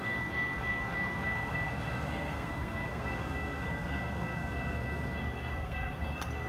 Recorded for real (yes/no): no